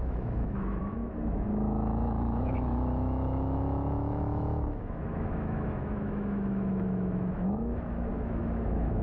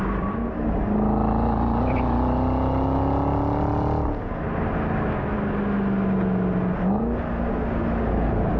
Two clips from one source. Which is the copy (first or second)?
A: first